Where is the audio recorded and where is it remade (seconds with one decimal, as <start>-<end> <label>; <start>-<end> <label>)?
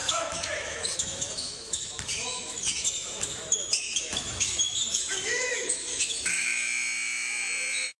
0.0-8.0 remade